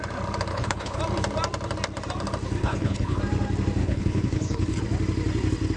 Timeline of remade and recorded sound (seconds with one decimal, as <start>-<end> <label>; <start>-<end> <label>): 0.0-0.5 recorded; 0.5-1.0 remade; 1.0-2.6 recorded; 2.6-3.2 remade; 3.2-3.8 recorded; 3.8-4.8 remade; 4.8-5.8 recorded